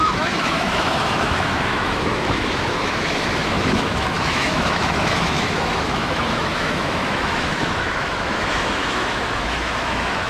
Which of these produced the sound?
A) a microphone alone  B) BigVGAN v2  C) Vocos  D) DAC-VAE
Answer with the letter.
D